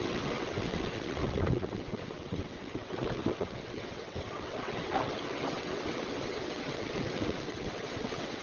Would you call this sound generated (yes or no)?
yes